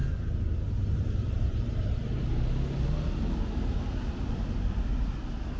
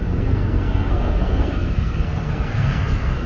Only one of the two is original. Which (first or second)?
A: first